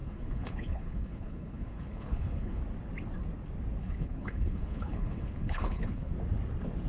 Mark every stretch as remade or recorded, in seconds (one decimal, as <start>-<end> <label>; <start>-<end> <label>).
0.0-2.6 remade; 2.6-3.8 recorded; 3.8-6.1 remade; 6.1-6.9 recorded